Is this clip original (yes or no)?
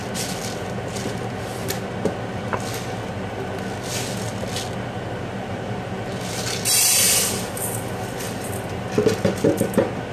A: yes